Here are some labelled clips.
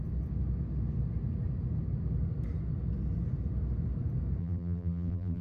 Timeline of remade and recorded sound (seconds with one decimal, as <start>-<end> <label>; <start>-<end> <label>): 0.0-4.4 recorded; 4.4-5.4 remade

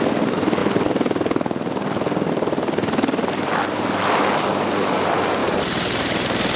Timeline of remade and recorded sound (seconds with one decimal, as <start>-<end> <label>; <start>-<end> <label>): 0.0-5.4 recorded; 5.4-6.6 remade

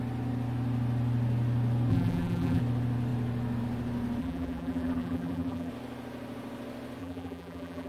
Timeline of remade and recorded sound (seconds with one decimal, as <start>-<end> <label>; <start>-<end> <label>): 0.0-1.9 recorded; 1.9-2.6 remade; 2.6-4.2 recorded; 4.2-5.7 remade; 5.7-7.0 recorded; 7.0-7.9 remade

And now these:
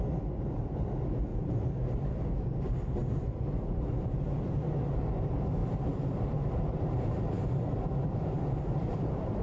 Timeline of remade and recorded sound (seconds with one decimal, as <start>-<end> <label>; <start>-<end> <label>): 0.0-1.3 recorded; 1.3-4.6 remade; 4.6-5.6 recorded; 5.6-9.4 remade